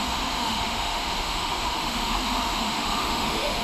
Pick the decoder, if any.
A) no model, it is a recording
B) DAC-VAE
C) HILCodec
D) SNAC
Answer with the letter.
B